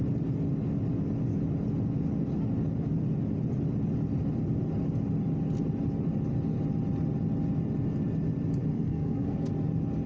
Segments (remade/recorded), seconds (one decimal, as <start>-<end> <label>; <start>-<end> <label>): 0.0-8.7 recorded; 8.7-9.5 remade; 9.5-10.1 recorded